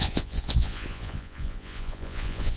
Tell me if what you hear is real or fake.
fake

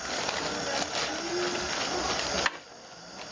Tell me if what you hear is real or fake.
real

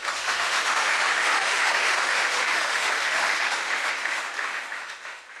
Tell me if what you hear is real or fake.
fake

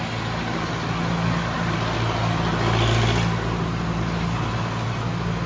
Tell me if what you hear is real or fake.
real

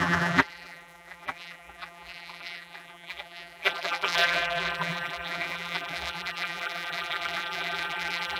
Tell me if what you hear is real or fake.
fake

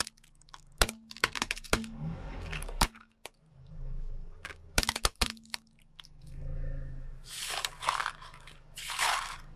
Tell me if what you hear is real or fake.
fake